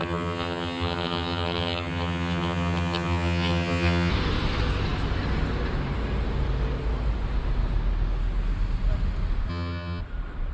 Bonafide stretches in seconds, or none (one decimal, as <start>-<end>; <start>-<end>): 4.1-9.5; 10.0-10.5